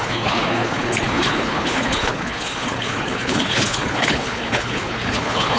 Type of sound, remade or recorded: remade